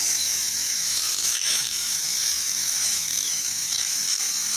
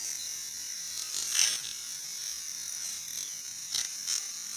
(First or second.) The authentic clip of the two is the second